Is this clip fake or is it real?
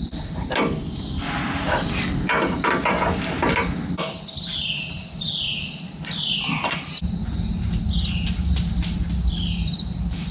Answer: real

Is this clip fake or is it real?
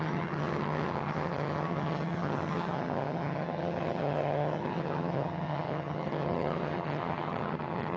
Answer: fake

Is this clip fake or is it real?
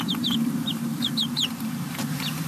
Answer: fake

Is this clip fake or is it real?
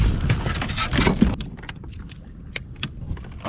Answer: real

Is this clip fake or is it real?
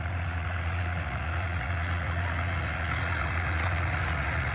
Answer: fake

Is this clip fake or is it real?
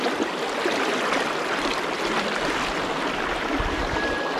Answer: real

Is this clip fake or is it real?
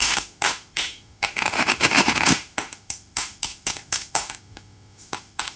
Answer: fake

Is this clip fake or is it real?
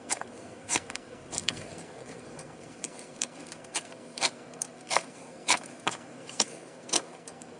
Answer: fake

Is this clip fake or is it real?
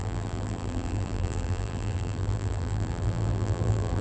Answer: fake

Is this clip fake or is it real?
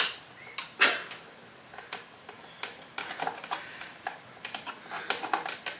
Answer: real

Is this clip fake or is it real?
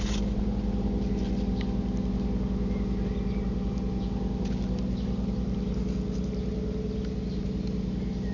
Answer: real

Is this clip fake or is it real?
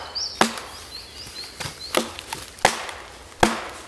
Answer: real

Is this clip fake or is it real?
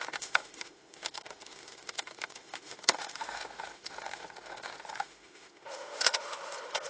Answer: fake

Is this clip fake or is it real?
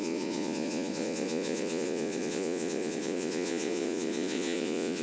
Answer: fake